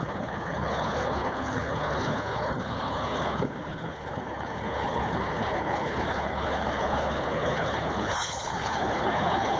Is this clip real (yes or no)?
no